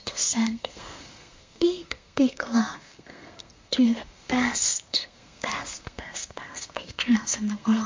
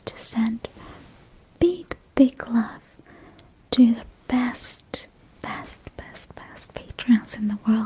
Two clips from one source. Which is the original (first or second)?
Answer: second